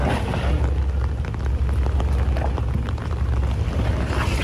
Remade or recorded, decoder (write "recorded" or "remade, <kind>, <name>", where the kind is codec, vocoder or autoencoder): recorded